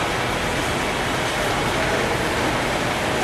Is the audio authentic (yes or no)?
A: no